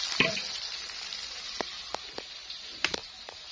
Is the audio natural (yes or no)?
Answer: yes